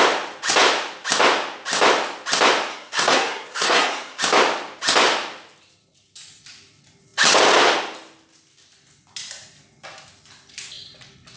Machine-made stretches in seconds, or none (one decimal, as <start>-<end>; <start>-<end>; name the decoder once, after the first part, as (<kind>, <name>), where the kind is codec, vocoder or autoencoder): 2.7-4.2 (codec, SNAC)